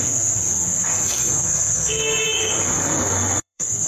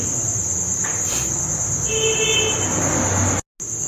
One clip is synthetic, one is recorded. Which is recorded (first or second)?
second